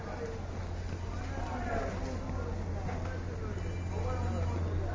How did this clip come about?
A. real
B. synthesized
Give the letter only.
A